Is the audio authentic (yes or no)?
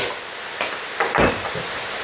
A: yes